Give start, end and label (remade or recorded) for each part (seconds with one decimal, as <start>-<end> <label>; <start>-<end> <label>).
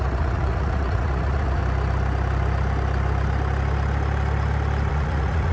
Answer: 0.0-1.6 remade; 1.6-4.9 recorded; 4.9-5.5 remade